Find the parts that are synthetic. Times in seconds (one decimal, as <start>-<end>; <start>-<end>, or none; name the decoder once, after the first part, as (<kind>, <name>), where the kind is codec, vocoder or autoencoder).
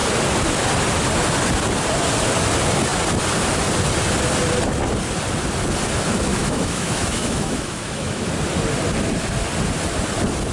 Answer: 6.3-8.3 (autoencoder, DAC-VAE)